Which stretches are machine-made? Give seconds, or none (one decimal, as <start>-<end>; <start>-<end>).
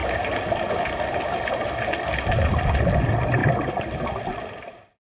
none